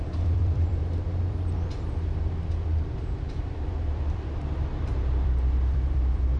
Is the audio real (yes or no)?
no